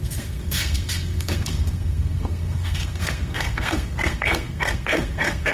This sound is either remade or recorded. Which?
remade